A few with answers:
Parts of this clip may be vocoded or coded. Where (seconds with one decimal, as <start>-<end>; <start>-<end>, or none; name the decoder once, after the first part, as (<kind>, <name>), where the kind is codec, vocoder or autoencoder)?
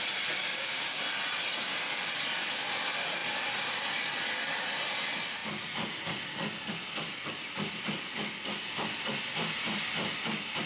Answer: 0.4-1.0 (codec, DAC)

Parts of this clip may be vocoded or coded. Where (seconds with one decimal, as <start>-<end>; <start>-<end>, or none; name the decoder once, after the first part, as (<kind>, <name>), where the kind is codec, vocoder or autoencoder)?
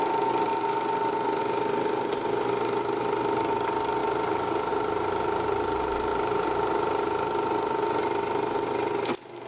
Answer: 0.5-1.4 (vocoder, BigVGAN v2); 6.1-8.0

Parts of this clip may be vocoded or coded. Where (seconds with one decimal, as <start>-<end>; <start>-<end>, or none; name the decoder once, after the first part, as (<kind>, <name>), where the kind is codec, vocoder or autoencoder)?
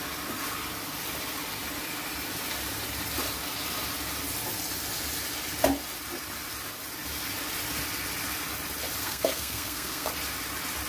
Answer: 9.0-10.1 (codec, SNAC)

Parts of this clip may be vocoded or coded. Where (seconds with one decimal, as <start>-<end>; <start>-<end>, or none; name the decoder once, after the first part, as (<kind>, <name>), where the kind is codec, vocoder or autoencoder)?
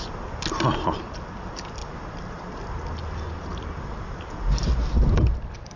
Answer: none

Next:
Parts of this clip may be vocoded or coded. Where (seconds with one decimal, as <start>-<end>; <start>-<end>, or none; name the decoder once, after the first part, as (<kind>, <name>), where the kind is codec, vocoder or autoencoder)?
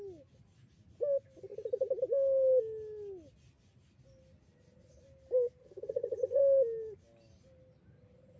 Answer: 5.6-6.4 (vocoder, HiFi-GAN)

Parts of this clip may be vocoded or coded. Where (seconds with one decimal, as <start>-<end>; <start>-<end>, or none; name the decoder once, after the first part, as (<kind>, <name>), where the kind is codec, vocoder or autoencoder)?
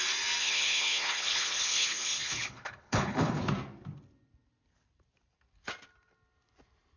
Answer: 0.4-3.4 (codec, HILCodec)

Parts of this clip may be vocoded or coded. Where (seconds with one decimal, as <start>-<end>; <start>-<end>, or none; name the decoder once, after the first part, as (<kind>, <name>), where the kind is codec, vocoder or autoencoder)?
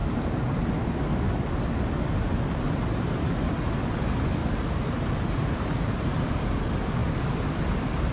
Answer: 0.0-0.6 (vocoder, BigVGAN v2); 2.3-3.3; 4.4-6.5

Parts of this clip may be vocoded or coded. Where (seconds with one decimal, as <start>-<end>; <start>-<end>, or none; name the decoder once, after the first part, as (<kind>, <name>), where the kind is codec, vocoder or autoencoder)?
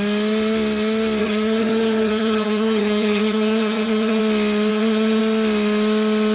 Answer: 1.2-4.2 (vocoder, HiFi-GAN); 4.7-5.2